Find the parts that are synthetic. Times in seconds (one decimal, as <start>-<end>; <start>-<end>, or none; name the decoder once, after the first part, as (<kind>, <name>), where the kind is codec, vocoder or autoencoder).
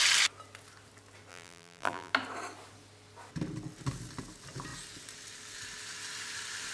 1.3-2.1 (vocoder, BigVGAN v2)